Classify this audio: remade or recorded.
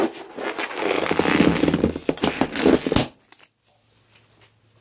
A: recorded